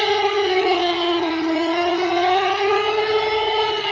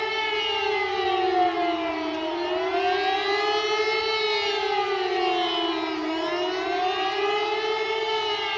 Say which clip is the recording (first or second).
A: second